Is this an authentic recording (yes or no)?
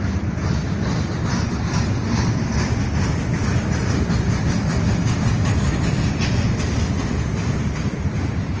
yes